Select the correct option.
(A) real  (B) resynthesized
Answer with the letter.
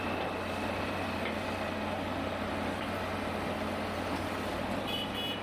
A